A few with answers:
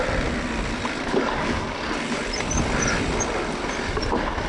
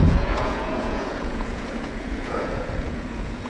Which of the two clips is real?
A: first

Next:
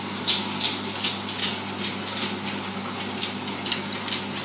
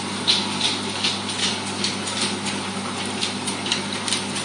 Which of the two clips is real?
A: first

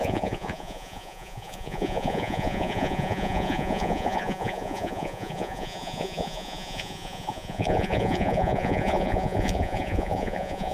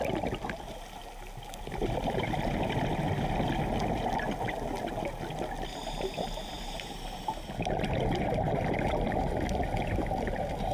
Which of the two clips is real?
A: second